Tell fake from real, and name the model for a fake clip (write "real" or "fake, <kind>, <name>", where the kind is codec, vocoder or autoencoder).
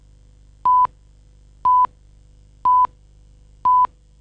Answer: real